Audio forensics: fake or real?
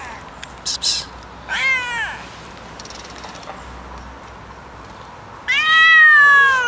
real